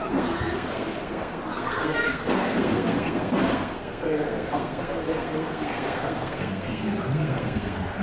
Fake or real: fake